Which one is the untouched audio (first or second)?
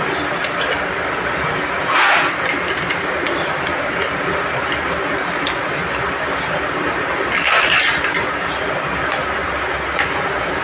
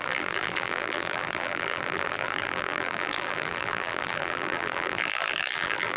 first